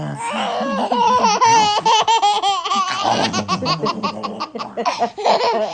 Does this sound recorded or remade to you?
recorded